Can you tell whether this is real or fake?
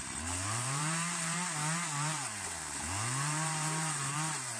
fake